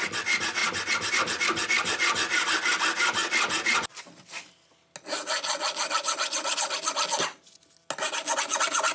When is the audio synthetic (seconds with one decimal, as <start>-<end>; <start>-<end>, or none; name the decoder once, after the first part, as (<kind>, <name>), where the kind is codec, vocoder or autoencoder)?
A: none